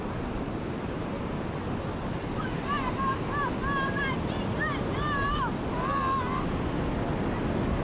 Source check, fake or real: real